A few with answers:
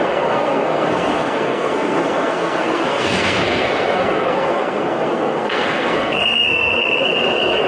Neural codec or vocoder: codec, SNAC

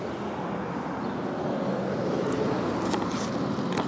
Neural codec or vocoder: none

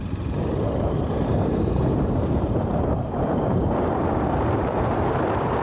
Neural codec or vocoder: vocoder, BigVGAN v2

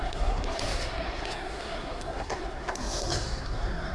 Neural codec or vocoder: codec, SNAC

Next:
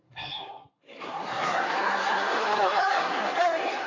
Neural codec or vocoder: codec, SNAC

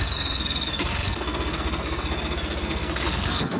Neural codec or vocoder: codec, SNAC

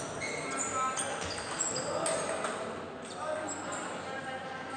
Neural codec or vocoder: none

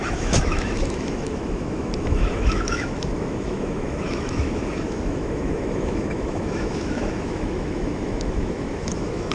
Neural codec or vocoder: autoencoder, DAC-VAE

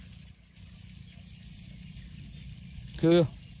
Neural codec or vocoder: none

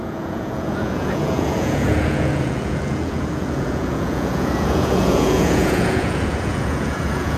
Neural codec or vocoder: vocoder, Vocos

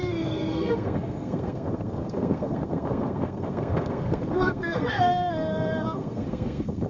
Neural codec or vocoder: codec, SNAC